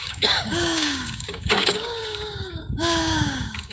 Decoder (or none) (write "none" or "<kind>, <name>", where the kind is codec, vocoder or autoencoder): codec, DAC